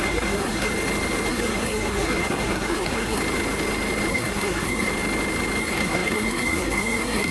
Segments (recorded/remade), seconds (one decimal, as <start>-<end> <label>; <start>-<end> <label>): 0.0-0.7 remade; 0.7-1.3 recorded; 1.3-3.2 remade; 3.2-4.1 recorded; 4.1-4.9 remade; 4.9-5.6 recorded; 5.6-7.3 remade